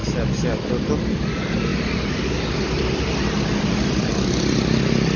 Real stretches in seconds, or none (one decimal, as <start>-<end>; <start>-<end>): 0.0-5.2